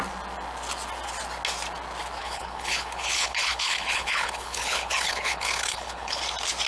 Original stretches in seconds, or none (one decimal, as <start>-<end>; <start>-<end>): 0.0-2.2; 6.2-6.7